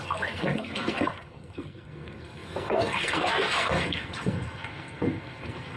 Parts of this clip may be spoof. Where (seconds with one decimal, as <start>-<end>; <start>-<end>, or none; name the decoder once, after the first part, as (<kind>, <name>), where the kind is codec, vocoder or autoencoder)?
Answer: 0.0-5.8 (codec, SNAC)